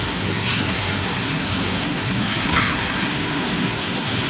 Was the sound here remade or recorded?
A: remade